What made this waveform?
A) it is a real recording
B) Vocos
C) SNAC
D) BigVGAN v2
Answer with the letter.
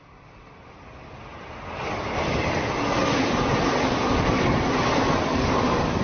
A